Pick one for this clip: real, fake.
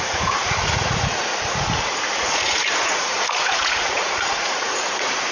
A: fake